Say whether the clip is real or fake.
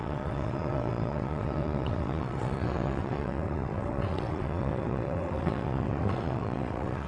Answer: fake